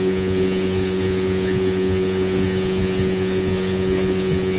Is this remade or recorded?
remade